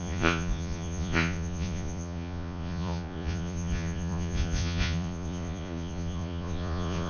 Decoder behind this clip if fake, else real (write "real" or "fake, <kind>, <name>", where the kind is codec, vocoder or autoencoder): fake, vocoder, Vocos